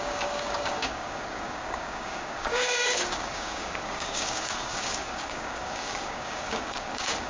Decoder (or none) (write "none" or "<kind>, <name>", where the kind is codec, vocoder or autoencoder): codec, DAC